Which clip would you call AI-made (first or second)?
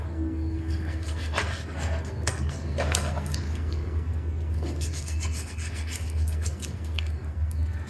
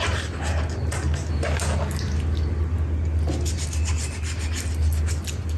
first